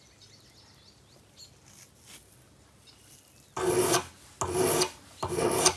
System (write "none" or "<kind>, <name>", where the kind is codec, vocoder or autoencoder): none